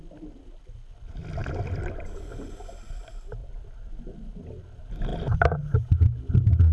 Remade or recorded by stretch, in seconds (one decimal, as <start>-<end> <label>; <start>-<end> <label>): 0.0-1.4 recorded; 1.4-2.3 remade; 2.3-3.4 recorded; 3.4-4.0 remade; 4.0-6.7 recorded